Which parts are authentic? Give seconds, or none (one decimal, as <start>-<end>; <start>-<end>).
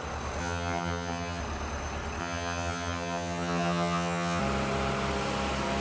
0.0-0.4; 1.4-2.2; 4.4-5.8